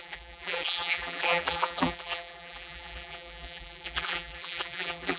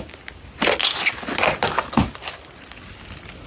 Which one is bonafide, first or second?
second